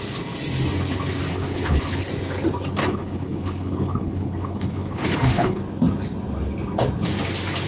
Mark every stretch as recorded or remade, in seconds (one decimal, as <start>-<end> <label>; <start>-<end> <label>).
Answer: 0.0-1.3 recorded; 1.3-2.1 remade; 2.1-2.8 recorded; 2.8-5.6 remade; 5.6-7.7 recorded